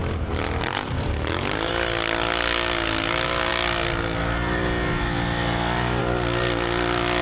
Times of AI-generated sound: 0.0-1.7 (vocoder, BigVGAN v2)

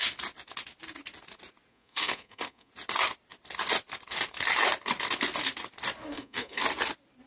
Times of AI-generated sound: 1.7-2.7 (codec, SNAC); 6.0-6.6

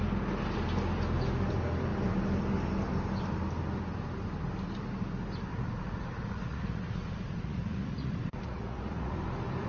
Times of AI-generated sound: 5.5-9.1 (vocoder, Vocos)

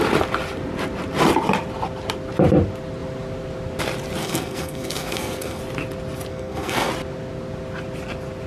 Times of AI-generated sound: 4.2-5.6 (codec, SNAC); 6.3-6.9

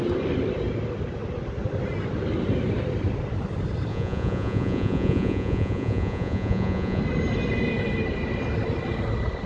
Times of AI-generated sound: 3.9-7.0 (vocoder, Vocos)